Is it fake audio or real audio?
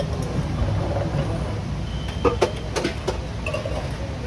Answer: real